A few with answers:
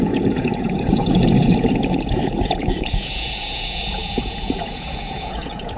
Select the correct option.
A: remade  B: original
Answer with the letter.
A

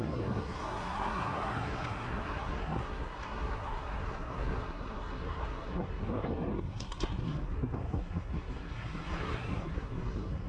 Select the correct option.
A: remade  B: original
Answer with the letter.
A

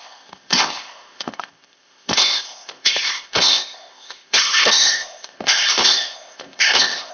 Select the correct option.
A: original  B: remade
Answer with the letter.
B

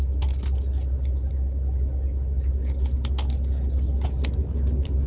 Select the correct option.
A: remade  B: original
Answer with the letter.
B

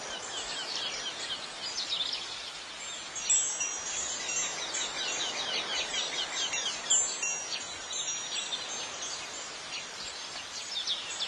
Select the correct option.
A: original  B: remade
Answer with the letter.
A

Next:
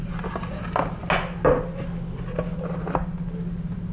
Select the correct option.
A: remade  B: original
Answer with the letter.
B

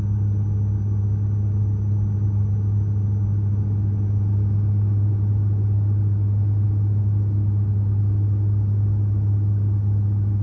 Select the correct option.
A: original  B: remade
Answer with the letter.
A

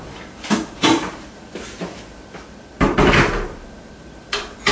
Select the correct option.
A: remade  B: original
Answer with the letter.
A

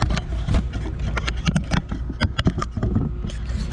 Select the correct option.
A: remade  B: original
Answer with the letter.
B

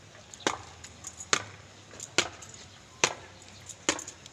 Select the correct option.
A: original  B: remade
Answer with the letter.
A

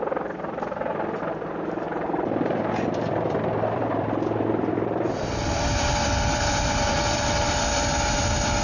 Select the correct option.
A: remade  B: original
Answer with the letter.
A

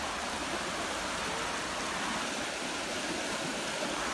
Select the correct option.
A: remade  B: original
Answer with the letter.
B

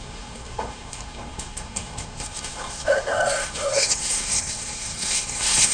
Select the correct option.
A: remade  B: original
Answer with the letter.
A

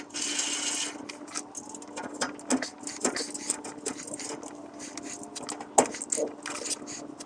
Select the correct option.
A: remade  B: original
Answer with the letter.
B